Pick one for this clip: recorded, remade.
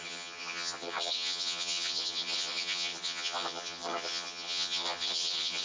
remade